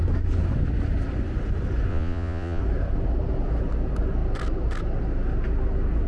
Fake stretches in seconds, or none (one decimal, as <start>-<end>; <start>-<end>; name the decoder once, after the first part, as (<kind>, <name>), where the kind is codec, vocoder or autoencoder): 1.9-2.6 (vocoder, Vocos)